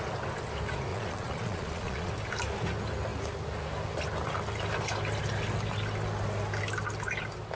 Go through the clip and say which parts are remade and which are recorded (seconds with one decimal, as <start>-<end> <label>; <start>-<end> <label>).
0.0-0.9 recorded; 0.9-2.1 remade; 2.1-7.5 recorded